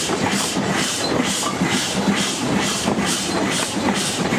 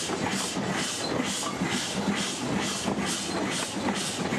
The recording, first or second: second